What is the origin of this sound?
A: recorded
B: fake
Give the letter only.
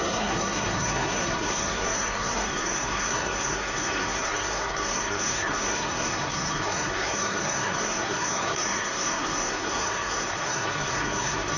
B